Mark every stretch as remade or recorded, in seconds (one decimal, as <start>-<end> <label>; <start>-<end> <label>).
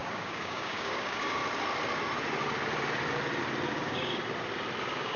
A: 0.0-1.4 remade; 1.4-3.7 recorded; 3.7-4.2 remade; 4.2-4.8 recorded; 4.8-5.2 remade